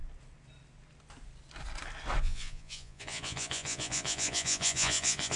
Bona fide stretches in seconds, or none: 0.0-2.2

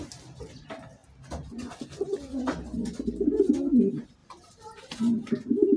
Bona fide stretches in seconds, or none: 0.0-4.2; 5.0-5.8

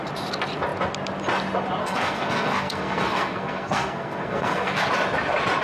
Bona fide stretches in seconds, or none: 0.0-1.8; 4.9-5.6

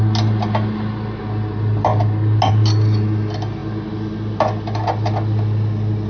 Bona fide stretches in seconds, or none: 0.0-6.1

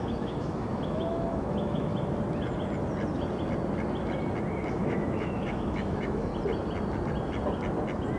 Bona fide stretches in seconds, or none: 1.9-4.7; 6.3-8.2

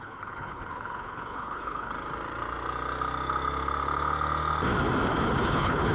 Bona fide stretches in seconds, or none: 1.9-5.4